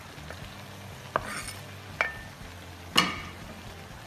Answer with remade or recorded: recorded